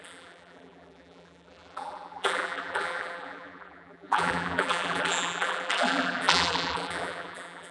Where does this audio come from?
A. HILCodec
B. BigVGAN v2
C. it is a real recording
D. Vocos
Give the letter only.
B